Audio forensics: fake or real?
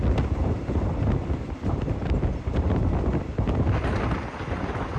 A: real